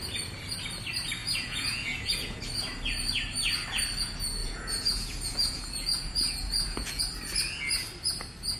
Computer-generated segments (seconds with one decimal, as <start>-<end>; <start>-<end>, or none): 1.2-2.4; 4.4-7.0